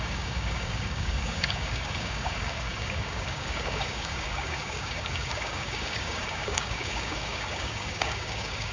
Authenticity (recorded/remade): remade